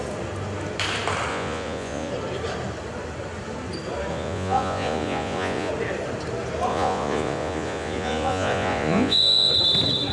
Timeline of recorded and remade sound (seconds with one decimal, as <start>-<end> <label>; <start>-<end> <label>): 0.0-1.3 recorded; 1.3-2.1 remade; 2.1-4.1 recorded; 4.1-5.7 remade; 5.7-6.7 recorded; 6.7-9.5 remade; 9.5-10.1 recorded